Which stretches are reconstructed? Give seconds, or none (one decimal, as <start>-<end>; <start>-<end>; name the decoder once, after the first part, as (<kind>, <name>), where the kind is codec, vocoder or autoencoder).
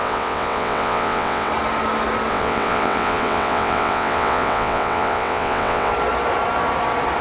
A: 0.0-1.5 (vocoder, WaveNeXt); 2.3-5.9